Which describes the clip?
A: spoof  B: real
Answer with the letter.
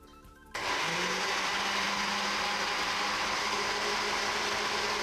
B